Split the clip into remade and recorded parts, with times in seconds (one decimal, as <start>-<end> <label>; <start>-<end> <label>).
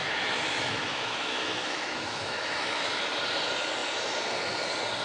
0.0-3.0 remade; 3.0-5.0 recorded